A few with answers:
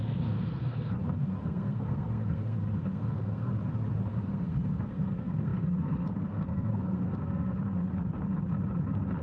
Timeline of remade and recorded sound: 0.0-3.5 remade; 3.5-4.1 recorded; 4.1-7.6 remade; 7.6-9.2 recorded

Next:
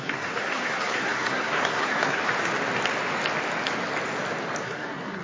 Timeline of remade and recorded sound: 0.0-2.2 remade; 2.2-4.6 recorded; 4.6-5.2 remade

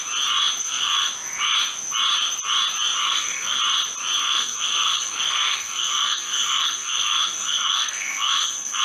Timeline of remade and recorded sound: 0.0-0.6 recorded; 0.6-1.1 remade; 1.1-3.0 recorded; 3.0-3.6 remade; 3.6-4.2 recorded; 4.2-8.8 remade

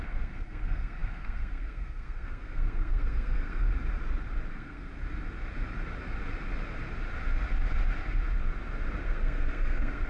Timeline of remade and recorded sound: 0.0-3.7 remade; 3.7-4.5 recorded; 4.5-4.9 remade; 4.9-9.0 recorded; 9.0-10.1 remade

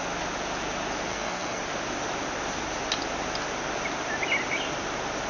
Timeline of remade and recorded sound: 0.0-1.1 recorded; 1.1-1.6 remade; 1.6-5.3 recorded

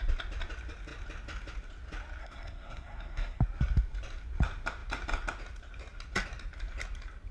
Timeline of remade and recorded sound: 0.0-2.2 recorded; 2.2-3.4 remade; 3.4-7.3 recorded

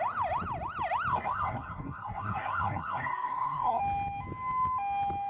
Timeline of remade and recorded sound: 0.0-1.1 recorded; 1.1-3.8 remade; 3.8-5.3 recorded

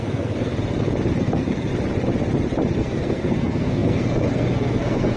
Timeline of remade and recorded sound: 0.0-0.5 remade; 0.5-1.2 recorded; 1.2-1.7 remade; 1.7-2.8 recorded; 2.8-5.2 remade